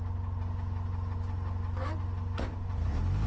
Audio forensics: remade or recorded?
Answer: recorded